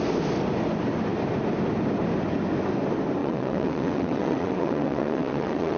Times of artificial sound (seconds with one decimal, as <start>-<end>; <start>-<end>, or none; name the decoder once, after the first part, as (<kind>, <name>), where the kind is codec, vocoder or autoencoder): 3.2-5.8 (vocoder, WaveNeXt)

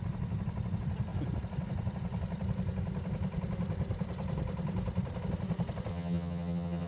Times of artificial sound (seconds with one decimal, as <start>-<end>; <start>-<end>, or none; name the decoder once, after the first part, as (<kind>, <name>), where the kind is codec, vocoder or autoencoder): 5.9-6.9 (vocoder, HiFi-GAN)